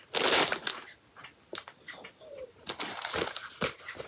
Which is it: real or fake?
real